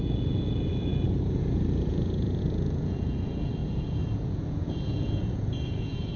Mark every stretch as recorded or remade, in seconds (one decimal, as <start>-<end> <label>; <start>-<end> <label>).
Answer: 0.0-6.2 remade